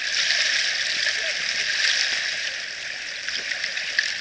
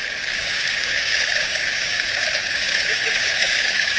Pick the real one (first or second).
first